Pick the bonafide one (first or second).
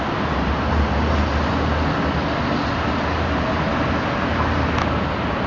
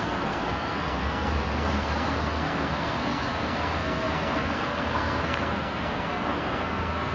first